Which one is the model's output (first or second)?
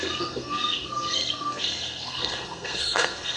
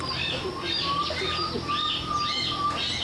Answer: first